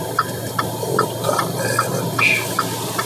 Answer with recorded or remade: remade